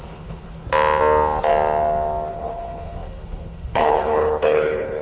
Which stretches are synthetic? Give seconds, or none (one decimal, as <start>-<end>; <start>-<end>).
0.0-0.6; 2.3-5.0